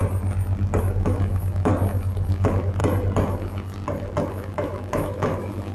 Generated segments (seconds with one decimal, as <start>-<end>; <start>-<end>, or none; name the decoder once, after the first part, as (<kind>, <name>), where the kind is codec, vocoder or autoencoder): 0.8-1.7 (autoencoder, DAC-VAE); 2.3-2.8; 4.3-5.7